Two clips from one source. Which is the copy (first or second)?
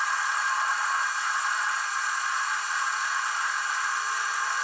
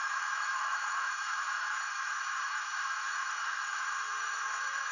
second